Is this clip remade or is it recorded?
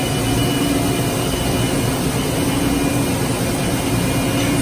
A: recorded